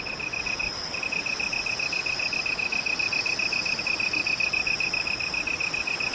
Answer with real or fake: real